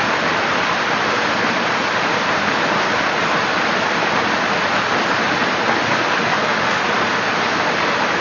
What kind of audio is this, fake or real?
real